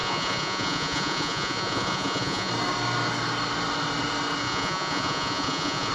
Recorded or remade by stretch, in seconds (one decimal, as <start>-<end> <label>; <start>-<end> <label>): 0.0-2.5 remade; 2.5-4.4 recorded; 4.4-5.9 remade